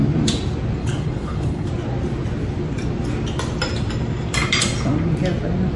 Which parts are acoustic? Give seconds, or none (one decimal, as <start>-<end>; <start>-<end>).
0.0-0.8; 1.7-5.8